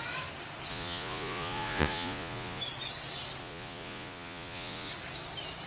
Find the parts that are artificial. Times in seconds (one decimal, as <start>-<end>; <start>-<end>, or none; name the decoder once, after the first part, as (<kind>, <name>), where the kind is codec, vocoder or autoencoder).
0.7-2.6 (vocoder, Vocos); 3.4-4.9